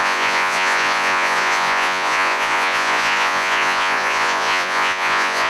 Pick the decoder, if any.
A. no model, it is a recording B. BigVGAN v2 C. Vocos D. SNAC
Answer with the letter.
C